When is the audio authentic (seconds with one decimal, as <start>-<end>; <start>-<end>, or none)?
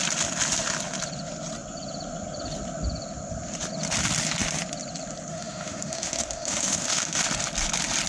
0.0-5.3; 7.2-8.1